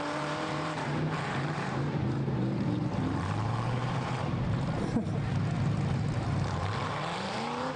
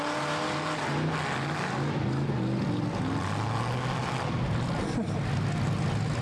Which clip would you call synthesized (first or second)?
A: first